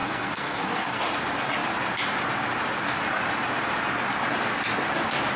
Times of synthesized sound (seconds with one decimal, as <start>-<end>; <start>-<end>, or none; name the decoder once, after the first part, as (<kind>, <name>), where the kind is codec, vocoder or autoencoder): 0.0-1.0 (codec, SNAC)